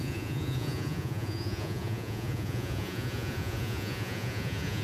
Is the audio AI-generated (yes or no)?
yes